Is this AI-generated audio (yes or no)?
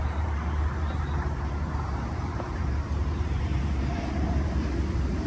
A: yes